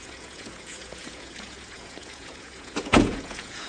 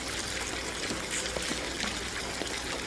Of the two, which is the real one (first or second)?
second